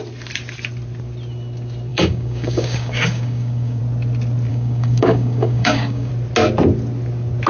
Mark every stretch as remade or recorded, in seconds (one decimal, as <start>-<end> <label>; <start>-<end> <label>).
0.0-1.9 recorded; 1.9-3.8 remade; 3.8-4.5 recorded; 4.5-6.1 remade; 6.1-7.5 recorded